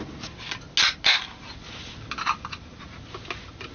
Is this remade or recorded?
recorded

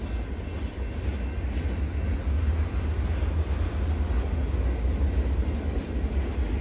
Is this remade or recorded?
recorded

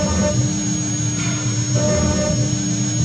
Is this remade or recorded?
recorded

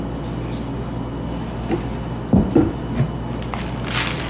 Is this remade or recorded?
recorded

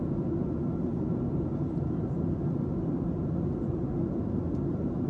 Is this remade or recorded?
recorded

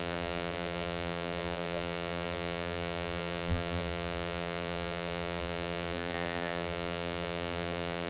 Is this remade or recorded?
remade